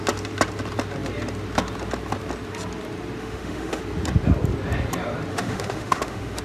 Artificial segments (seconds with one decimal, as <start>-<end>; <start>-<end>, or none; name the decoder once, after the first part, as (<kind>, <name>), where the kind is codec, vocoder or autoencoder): 3.2-3.8 (autoencoder, DAC-VAE); 5.3-6.4